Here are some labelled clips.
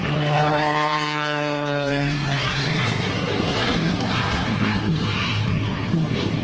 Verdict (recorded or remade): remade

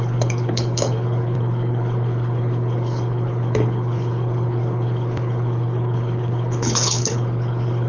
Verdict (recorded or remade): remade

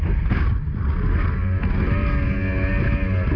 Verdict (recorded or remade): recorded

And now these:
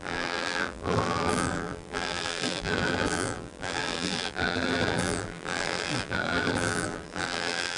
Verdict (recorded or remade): remade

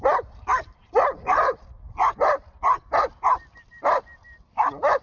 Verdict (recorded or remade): recorded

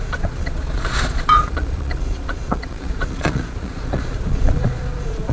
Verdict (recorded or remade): remade